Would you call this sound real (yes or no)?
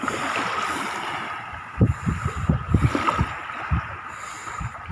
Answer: yes